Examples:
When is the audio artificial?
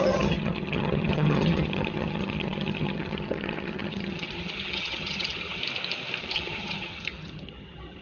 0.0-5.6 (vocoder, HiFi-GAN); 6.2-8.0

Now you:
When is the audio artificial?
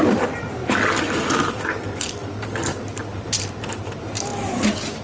0.0-0.6 (vocoder, BigVGAN v2); 1.3-2.2; 2.8-4.3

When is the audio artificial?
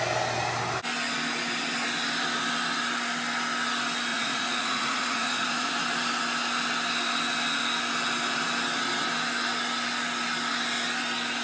4.1-5.7 (vocoder, Vocos)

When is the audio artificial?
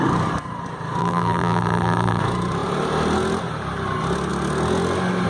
1.0-2.2 (vocoder, BigVGAN v2)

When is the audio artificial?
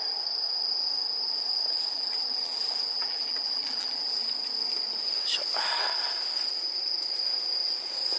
1.9-4.3 (vocoder, BigVGAN v2)